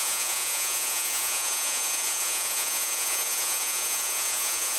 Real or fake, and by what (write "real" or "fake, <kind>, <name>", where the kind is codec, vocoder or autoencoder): fake, vocoder, Vocos